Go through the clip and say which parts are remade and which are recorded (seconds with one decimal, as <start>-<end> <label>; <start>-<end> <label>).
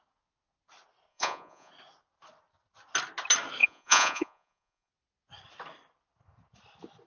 0.0-1.1 recorded; 1.1-1.7 remade; 1.7-3.6 recorded; 3.6-4.9 remade; 4.9-7.1 recorded